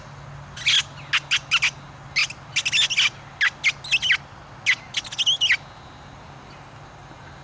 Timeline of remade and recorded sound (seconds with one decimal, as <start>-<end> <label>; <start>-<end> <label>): 0.0-7.4 recorded